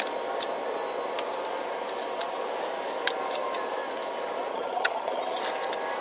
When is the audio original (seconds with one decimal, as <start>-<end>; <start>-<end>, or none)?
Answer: 0.0-4.5; 5.4-6.0